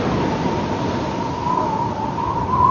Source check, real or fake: real